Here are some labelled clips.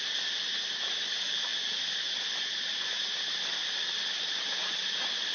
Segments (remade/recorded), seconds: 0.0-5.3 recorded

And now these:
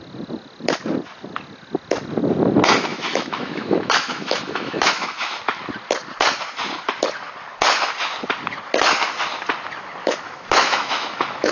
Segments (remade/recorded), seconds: 0.0-2.9 recorded; 2.9-5.4 remade; 5.4-10.0 recorded; 10.0-11.5 remade

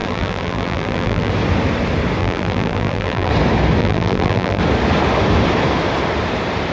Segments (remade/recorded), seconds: 0.0-1.3 remade; 1.3-2.2 recorded; 2.2-3.3 remade; 3.3-3.8 recorded; 3.8-4.6 remade; 4.6-6.7 recorded

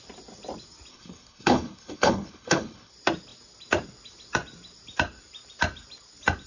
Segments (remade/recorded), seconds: 0.0-0.9 recorded; 0.9-2.9 remade; 2.9-6.5 recorded